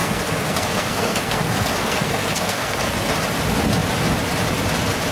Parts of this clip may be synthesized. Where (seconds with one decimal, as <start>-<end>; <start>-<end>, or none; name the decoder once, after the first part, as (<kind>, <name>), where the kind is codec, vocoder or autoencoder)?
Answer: 0.0-3.1 (codec, SNAC)